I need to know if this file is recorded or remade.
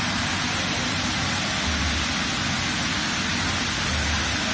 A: recorded